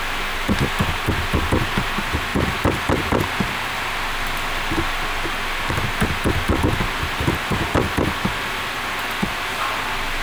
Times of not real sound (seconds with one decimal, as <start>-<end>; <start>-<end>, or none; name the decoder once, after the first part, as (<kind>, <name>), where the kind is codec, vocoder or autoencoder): none